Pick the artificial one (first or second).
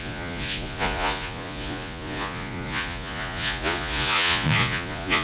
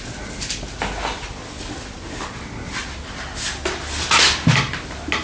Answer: first